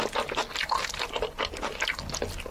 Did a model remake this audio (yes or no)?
no